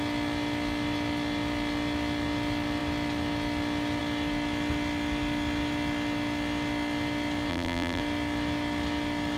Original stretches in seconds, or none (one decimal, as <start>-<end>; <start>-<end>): 0.0-7.5; 8.0-9.4